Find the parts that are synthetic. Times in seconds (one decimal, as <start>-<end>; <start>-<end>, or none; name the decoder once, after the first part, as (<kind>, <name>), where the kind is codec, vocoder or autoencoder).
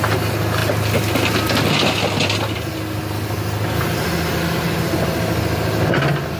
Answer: none